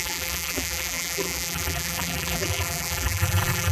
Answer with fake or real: fake